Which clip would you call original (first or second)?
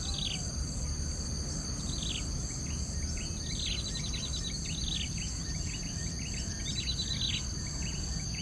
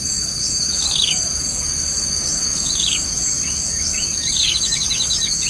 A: first